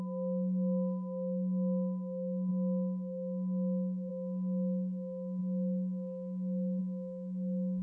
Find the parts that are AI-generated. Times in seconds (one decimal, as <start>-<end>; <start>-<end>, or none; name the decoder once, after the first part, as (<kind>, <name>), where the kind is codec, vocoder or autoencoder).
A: none